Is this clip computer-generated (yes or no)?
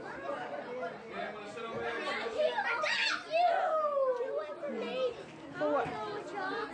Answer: no